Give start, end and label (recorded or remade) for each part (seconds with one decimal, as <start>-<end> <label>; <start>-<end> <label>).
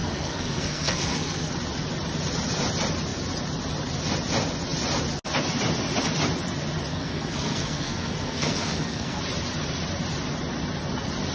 0.0-1.5 remade; 1.5-6.9 recorded; 6.9-9.2 remade; 9.2-11.3 recorded